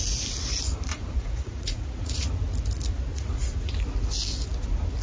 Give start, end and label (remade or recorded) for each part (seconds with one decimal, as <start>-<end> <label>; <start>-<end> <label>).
0.0-0.9 recorded; 0.9-2.3 remade; 2.3-3.1 recorded; 3.1-3.7 remade; 3.7-5.0 recorded